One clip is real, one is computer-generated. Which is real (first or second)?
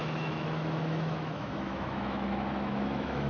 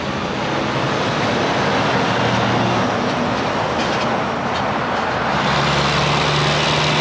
second